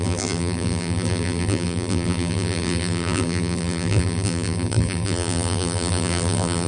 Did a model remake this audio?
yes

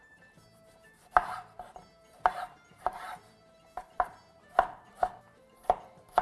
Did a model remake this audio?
yes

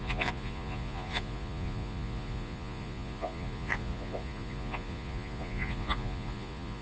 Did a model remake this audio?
yes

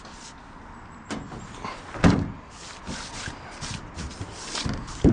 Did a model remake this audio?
no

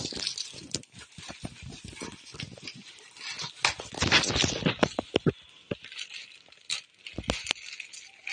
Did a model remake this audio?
no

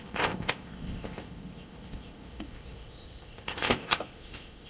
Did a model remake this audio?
yes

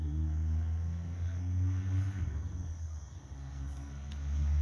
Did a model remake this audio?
yes